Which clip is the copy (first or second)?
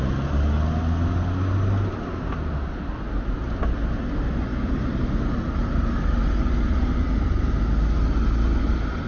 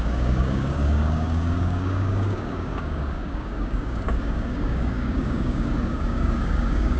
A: second